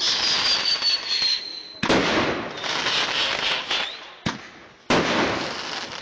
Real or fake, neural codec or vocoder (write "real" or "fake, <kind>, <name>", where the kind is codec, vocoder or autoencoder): real